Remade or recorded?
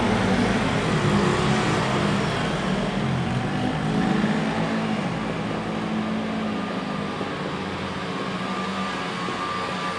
recorded